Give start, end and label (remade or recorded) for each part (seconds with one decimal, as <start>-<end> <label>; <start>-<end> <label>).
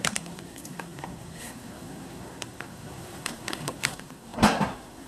0.0-5.1 remade